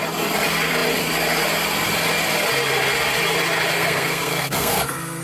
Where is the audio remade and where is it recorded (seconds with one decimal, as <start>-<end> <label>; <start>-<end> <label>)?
0.0-3.7 recorded; 3.7-5.2 remade